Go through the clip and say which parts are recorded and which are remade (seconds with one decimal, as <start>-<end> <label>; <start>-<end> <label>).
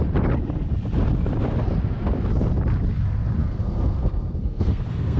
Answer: 0.0-3.4 recorded; 3.4-5.2 remade